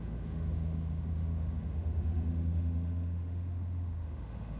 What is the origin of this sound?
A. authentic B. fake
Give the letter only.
B